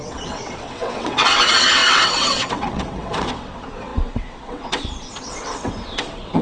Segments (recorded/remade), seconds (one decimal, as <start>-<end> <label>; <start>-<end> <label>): 0.0-6.4 remade